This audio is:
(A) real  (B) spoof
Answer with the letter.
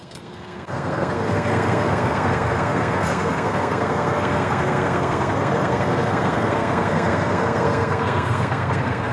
B